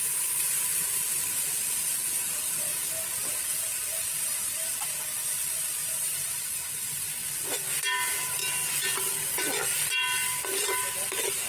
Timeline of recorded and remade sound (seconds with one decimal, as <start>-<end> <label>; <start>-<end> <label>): 0.0-2.7 remade; 2.7-3.6 recorded; 3.6-8.4 remade; 8.4-9.9 recorded; 9.9-11.5 remade